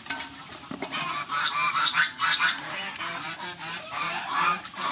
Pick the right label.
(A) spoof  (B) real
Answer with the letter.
A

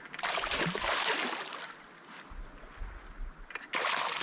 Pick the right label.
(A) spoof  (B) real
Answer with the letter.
B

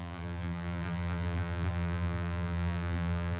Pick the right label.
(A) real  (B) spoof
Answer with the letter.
B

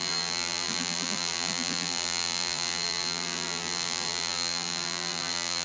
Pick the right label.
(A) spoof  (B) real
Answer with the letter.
A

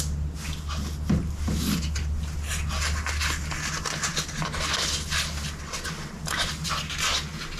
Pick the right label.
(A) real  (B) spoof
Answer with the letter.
A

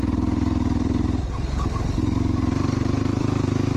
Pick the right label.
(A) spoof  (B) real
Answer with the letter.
A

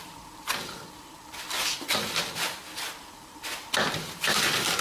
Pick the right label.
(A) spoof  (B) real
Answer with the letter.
A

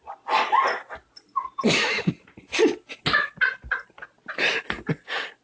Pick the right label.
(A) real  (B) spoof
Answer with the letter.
A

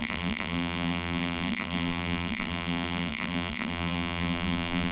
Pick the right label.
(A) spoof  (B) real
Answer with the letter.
A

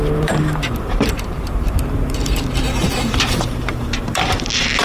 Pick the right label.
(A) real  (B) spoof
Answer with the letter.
B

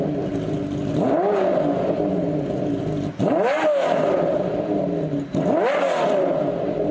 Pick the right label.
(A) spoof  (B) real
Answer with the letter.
B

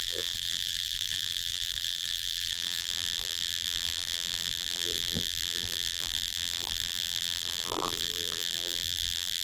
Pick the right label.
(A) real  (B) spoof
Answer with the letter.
B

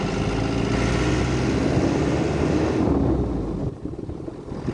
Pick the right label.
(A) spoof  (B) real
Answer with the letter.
B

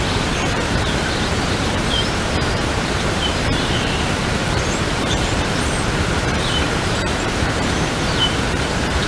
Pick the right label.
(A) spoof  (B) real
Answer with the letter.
A